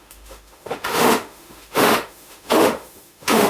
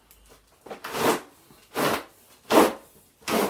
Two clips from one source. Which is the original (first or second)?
second